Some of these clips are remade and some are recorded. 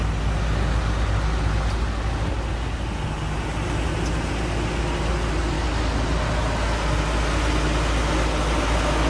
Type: recorded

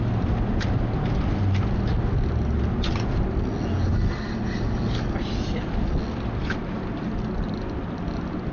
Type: recorded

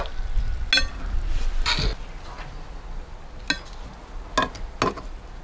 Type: recorded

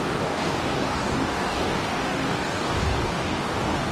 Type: remade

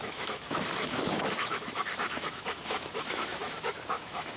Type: remade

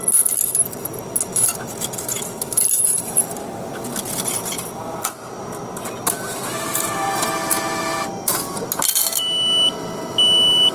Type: recorded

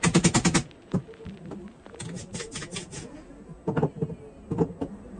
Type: recorded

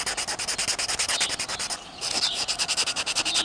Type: recorded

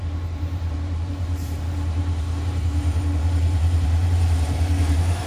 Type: remade